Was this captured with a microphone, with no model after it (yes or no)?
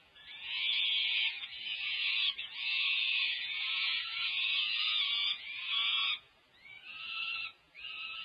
no